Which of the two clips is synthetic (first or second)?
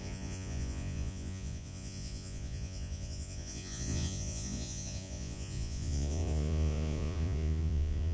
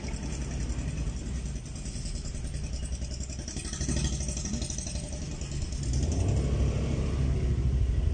first